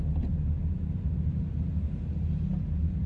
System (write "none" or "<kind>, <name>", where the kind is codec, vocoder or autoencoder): none